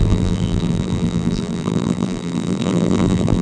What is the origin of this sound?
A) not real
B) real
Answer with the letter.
A